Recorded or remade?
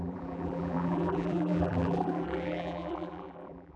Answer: remade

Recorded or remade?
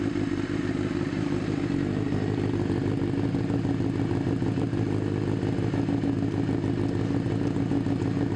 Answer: recorded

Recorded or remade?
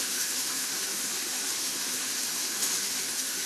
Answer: remade